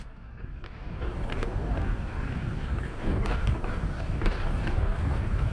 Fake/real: fake